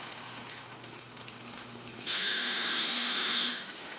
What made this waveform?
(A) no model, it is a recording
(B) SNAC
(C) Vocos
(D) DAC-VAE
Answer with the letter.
D